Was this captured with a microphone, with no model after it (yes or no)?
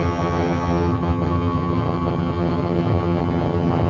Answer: no